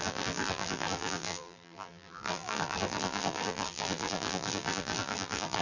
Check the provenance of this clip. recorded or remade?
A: remade